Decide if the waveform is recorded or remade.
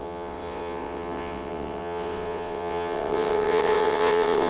remade